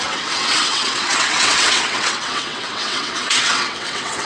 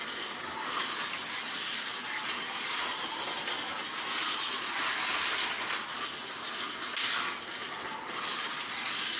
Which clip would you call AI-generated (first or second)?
first